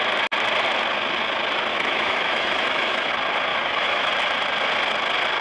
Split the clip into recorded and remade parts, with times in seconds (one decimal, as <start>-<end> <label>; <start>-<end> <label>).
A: 0.0-1.7 recorded; 1.7-3.1 remade; 3.1-3.5 recorded; 3.5-4.1 remade; 4.1-5.4 recorded